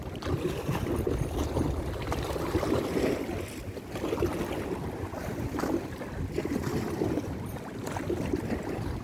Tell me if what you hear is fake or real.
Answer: real